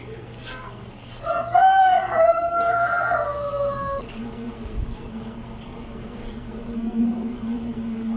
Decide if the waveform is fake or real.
fake